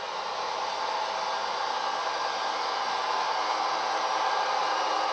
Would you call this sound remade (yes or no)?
no